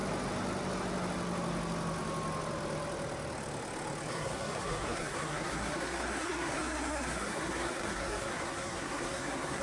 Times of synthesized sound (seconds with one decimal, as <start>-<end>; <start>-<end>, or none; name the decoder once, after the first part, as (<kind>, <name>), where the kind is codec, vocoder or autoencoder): 4.1-9.6 (codec, SNAC)